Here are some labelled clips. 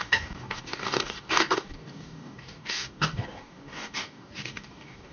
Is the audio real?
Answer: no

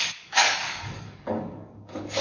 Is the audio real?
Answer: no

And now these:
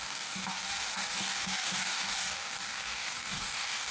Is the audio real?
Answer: no